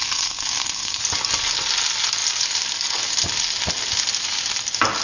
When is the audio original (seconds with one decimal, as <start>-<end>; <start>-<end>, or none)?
1.0-5.0